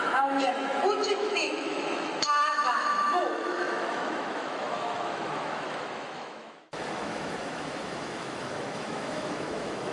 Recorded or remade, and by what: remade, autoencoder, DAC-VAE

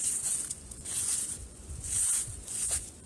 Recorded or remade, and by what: remade, vocoder, Vocos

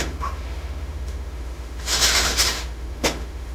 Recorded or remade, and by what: remade, autoencoder, DAC-VAE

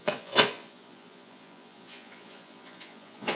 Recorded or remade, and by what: remade, vocoder, Vocos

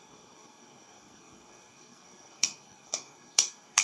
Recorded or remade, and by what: remade, codec, SNAC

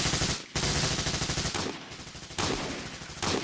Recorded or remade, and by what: recorded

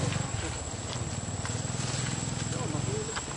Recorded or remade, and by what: recorded